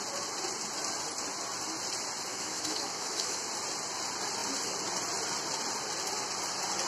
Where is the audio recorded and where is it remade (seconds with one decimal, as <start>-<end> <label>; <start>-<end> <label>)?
0.0-2.3 recorded; 2.3-3.4 remade; 3.4-6.9 recorded